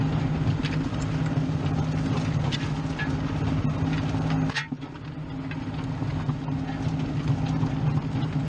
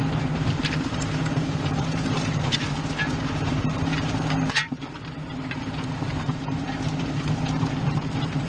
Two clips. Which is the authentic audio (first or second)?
first